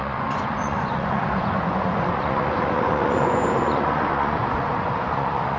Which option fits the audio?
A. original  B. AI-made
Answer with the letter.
B